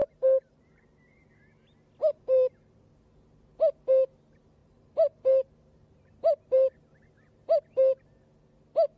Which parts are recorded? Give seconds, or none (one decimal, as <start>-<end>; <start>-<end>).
1.3-2.0; 2.9-4.6; 6.7-9.0